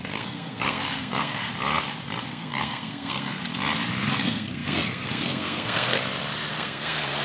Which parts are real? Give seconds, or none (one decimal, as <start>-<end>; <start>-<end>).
1.5-2.3; 3.4-4.1; 6.0-6.5